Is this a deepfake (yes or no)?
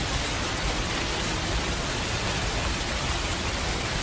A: yes